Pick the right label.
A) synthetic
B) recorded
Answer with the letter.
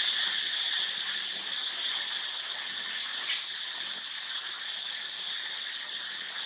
B